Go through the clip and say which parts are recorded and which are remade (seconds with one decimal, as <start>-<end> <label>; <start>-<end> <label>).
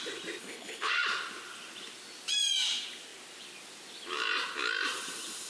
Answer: 0.0-0.4 recorded; 0.4-0.9 remade; 0.9-5.5 recorded